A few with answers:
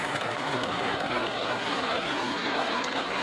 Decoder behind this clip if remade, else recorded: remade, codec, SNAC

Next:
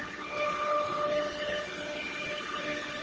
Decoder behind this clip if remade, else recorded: remade, codec, HILCodec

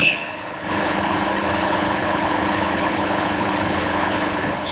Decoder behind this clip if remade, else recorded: remade, codec, HILCodec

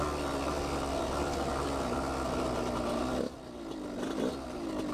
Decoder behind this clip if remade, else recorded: recorded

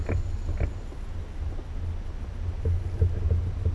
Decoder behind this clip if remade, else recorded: recorded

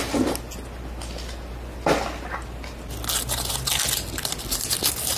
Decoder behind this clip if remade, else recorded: recorded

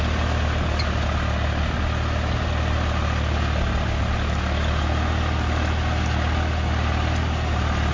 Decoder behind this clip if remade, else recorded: recorded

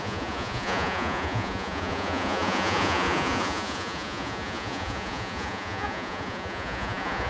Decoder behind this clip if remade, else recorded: remade, vocoder, Vocos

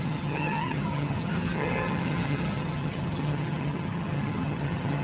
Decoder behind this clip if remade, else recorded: remade, vocoder, HiFi-GAN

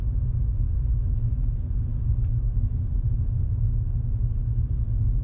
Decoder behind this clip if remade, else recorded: recorded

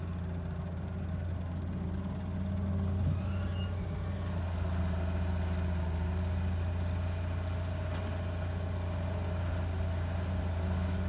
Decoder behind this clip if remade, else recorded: recorded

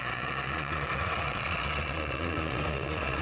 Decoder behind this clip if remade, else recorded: remade, vocoder, Vocos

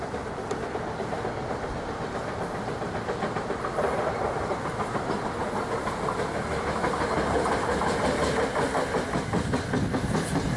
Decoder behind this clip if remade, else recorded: recorded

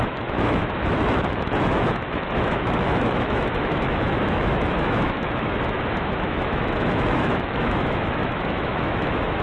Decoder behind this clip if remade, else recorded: remade, autoencoder, DAC-VAE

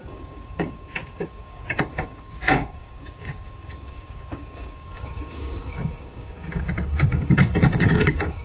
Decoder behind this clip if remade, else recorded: remade, codec, DAC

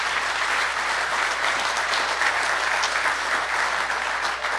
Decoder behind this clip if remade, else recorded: recorded